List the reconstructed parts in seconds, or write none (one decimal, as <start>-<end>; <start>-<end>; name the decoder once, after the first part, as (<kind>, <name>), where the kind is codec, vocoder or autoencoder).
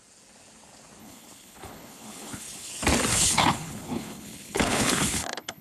1.0-2.7 (codec, HILCodec); 3.1-5.6